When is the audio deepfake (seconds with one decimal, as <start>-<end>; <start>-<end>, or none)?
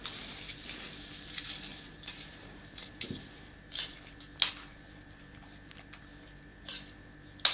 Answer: 1.7-4.1; 4.7-6.0